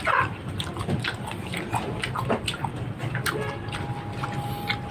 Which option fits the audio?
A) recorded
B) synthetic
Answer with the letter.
A